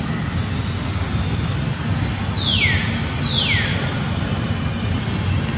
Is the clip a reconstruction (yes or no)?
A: no